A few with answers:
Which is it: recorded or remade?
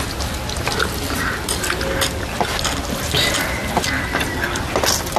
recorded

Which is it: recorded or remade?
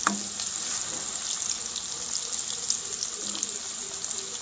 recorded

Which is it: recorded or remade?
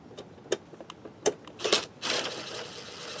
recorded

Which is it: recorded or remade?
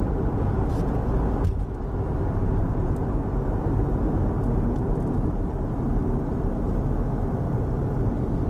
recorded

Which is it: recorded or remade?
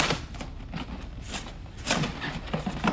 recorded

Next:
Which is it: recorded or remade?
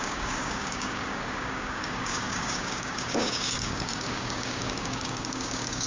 remade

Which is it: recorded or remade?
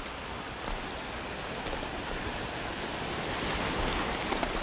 recorded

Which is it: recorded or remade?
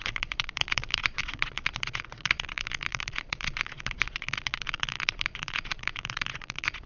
remade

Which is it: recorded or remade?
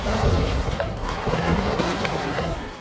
remade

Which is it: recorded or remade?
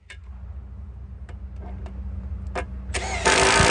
recorded